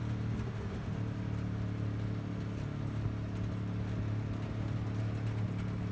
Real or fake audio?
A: real